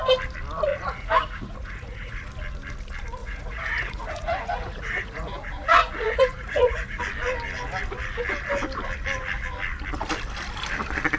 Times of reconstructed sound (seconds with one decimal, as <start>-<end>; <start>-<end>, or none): 0.7-2.2; 3.2-7.0